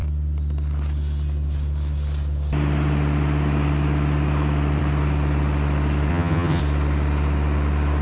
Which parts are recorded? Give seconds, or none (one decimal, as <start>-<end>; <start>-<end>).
0.0-6.1; 6.6-8.0